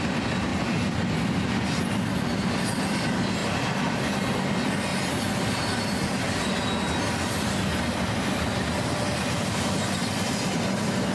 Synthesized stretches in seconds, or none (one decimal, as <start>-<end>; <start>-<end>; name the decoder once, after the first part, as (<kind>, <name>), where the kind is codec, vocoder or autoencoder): 3.4-4.1 (vocoder, BigVGAN v2)